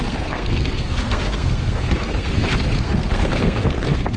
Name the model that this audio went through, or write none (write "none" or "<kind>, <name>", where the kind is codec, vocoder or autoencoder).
codec, SNAC